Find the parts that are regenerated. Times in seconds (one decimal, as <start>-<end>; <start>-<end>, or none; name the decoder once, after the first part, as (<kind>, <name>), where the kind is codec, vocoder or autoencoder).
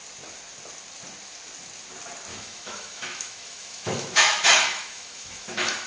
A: 2.3-5.9 (autoencoder, DAC-VAE)